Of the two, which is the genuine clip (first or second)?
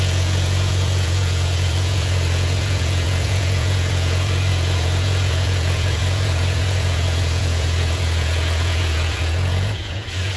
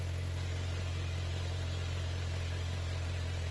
second